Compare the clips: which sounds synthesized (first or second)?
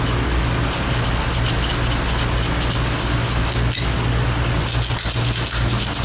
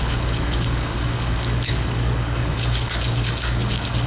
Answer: second